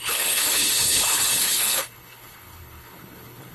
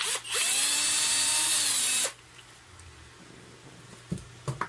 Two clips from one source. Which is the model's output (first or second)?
first